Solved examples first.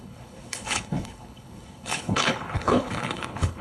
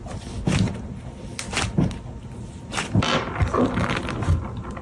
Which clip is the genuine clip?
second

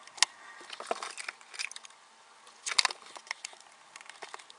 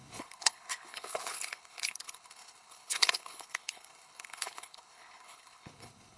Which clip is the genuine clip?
first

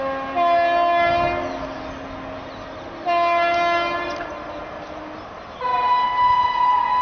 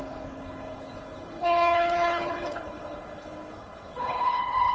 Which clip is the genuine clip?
first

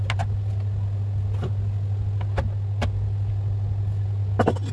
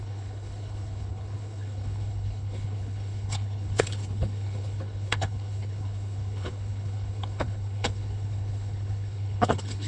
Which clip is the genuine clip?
first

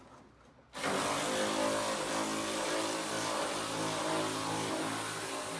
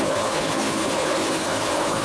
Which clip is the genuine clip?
first